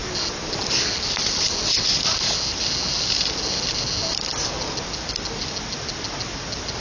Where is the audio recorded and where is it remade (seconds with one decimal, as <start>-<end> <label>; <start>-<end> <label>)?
0.0-6.8 recorded